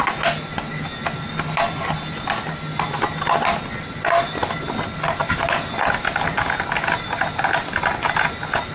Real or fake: real